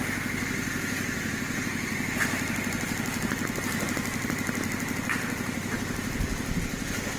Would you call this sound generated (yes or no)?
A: no